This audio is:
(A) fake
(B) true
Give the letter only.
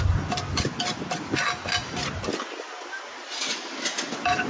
B